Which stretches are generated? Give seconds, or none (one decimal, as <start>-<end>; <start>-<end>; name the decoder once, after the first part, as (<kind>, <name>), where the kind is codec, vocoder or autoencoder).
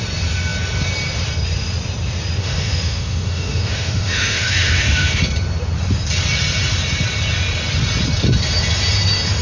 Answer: 2.4-5.2 (autoencoder, DAC-VAE)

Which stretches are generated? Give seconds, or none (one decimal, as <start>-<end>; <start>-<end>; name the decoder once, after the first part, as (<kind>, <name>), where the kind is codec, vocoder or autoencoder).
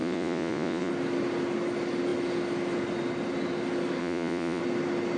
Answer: 0.0-0.9 (vocoder, Vocos); 4.0-4.6